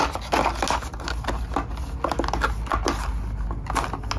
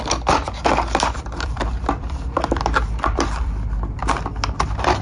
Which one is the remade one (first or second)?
second